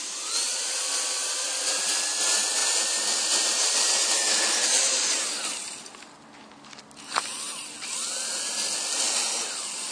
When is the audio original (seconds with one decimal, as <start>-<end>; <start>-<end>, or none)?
0.0-9.9